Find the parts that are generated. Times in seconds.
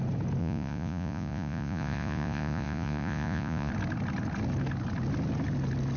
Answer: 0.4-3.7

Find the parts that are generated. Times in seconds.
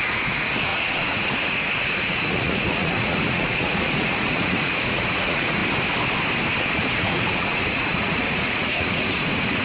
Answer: 0.0-5.6; 6.6-9.6